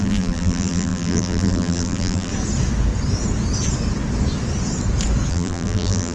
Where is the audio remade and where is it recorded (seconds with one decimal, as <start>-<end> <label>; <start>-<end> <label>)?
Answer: 0.0-2.3 remade; 2.3-5.3 recorded; 5.3-6.1 remade